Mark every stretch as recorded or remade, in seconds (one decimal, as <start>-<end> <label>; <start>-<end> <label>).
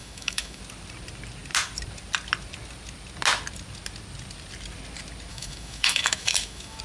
0.0-0.6 remade; 0.6-5.3 recorded; 5.3-6.8 remade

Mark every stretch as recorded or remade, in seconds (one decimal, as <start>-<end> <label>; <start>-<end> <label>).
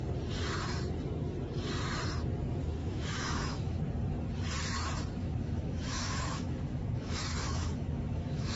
0.0-2.8 recorded; 2.8-3.8 remade; 3.8-5.2 recorded; 5.2-8.6 remade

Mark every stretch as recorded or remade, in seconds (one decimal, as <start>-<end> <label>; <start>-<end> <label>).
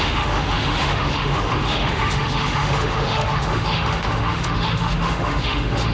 0.0-5.9 remade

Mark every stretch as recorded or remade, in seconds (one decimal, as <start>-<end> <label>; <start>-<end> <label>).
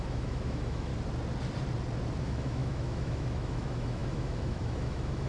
0.0-0.9 remade; 0.9-2.2 recorded; 2.2-5.3 remade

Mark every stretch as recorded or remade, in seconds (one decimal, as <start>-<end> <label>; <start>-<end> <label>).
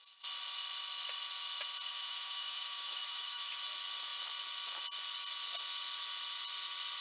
0.0-1.9 recorded; 1.9-3.5 remade; 3.5-7.0 recorded